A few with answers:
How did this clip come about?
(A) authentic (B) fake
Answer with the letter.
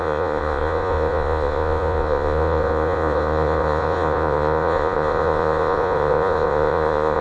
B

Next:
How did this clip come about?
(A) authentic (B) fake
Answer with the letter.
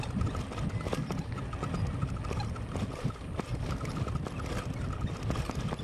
A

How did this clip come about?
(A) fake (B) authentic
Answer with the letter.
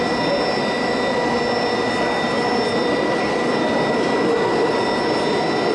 B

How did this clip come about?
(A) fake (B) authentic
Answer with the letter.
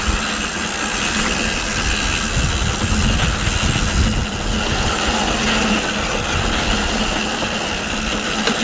B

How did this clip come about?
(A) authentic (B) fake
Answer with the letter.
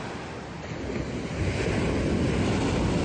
A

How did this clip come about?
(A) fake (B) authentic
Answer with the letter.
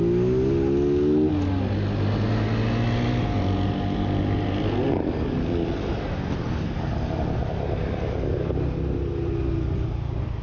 B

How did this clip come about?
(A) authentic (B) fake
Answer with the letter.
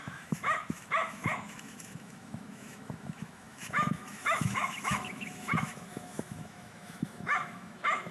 B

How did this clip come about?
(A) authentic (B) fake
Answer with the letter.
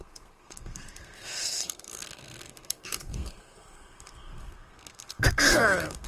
B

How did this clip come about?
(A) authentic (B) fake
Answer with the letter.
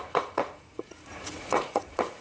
B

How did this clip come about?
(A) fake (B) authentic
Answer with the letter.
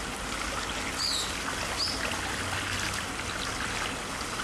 B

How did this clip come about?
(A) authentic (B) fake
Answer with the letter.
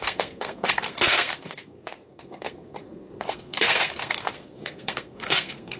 B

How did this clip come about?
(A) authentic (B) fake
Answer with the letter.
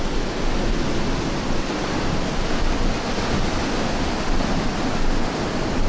A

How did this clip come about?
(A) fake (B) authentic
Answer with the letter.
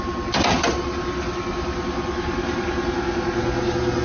B